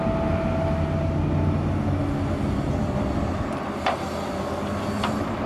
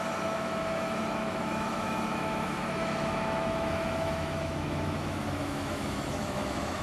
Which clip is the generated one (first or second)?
second